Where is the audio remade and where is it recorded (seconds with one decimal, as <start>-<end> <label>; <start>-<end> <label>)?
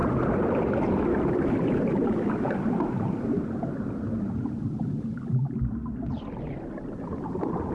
0.0-3.9 remade; 3.9-7.7 recorded